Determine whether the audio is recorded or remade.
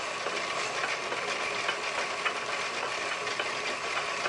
recorded